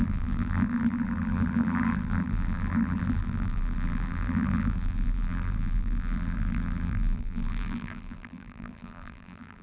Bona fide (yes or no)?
no